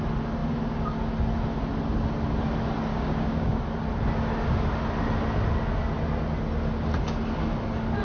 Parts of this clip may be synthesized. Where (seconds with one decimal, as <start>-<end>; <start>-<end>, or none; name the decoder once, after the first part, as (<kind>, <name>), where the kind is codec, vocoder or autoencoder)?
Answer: 2.9-3.6 (codec, DAC)